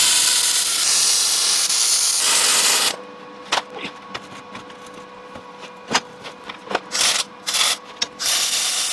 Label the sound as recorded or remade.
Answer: recorded